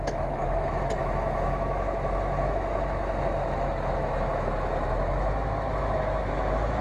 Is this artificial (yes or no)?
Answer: yes